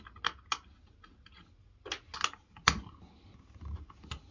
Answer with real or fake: real